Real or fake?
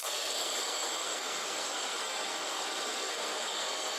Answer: fake